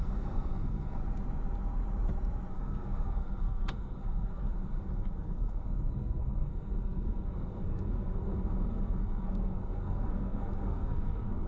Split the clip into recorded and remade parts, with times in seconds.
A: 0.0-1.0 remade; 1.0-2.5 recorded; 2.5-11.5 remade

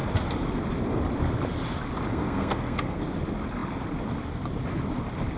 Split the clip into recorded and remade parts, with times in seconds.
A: 0.0-2.1 recorded; 2.1-3.0 remade; 3.0-5.4 recorded